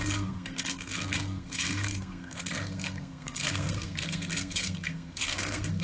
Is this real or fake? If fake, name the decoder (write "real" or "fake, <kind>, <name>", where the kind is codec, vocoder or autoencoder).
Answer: fake, codec, SNAC